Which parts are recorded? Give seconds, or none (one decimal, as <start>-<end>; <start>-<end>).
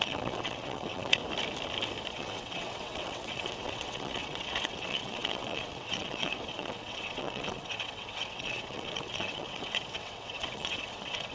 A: 1.2-2.1